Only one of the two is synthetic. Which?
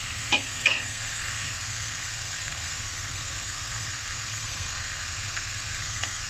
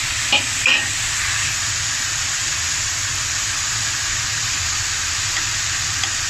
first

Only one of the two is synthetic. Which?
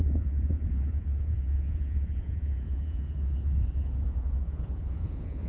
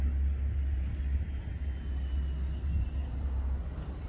first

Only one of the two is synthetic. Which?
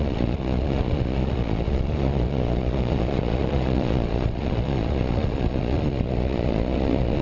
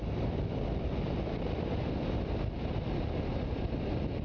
first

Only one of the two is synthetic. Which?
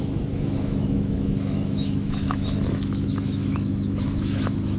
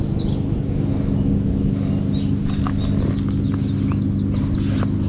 first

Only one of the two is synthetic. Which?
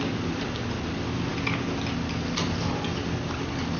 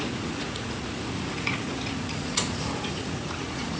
second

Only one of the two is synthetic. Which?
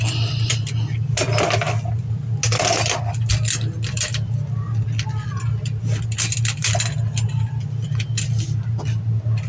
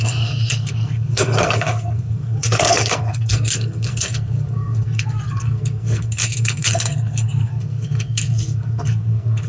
second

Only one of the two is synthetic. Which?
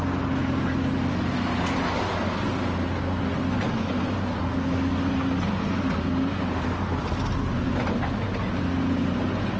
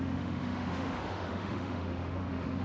second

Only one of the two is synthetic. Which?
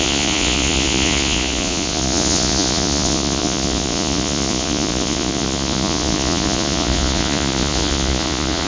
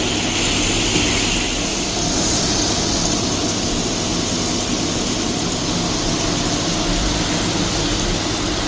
first